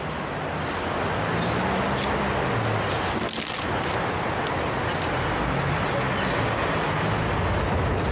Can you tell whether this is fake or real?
real